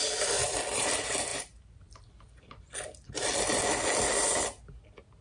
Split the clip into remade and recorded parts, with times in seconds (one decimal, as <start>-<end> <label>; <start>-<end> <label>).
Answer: 0.0-5.2 recorded